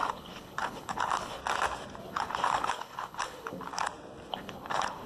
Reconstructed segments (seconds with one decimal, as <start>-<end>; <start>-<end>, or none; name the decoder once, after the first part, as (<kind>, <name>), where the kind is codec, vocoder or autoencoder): 0.0-1.4 (codec, HILCodec); 2.0-3.7; 4.3-5.1